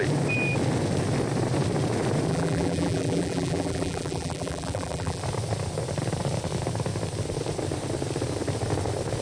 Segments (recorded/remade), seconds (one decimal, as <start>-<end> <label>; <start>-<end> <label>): 0.0-2.3 recorded; 2.3-5.2 remade; 5.2-9.2 recorded